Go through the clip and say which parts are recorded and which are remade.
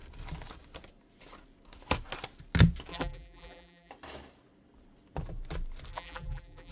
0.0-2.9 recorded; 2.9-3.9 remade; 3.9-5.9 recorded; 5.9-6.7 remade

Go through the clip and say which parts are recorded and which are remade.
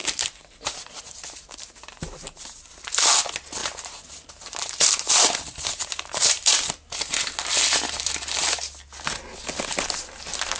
0.0-2.7 remade; 2.7-3.6 recorded; 3.6-6.7 remade; 6.7-10.6 recorded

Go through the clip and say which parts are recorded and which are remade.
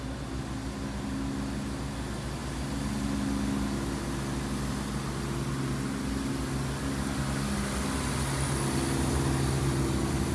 0.0-10.3 recorded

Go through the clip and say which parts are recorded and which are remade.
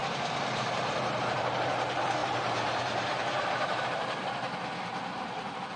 0.0-1.2 remade; 1.2-2.2 recorded; 2.2-3.8 remade; 3.8-5.8 recorded